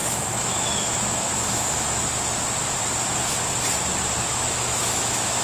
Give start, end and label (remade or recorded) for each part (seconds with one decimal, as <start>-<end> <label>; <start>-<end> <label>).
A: 0.0-2.0 remade; 2.0-4.3 recorded; 4.3-5.4 remade